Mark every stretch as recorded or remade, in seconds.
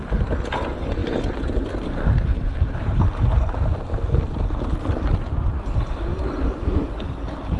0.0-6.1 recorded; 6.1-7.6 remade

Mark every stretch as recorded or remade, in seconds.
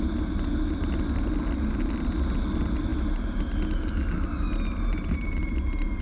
0.0-6.0 recorded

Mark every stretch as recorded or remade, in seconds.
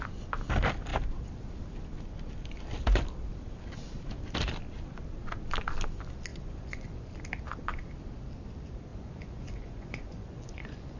0.0-6.3 recorded; 6.3-7.1 remade; 7.1-8.9 recorded; 8.9-11.0 remade